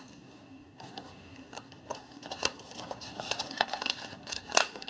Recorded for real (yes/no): no